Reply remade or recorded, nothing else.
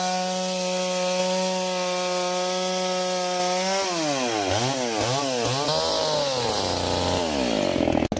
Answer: recorded